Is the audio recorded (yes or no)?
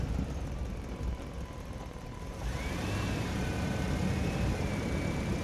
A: no